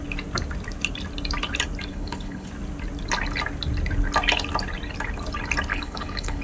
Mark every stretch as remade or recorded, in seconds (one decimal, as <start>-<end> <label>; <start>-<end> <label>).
0.0-1.9 recorded; 1.9-2.5 remade; 2.5-5.7 recorded; 5.7-6.4 remade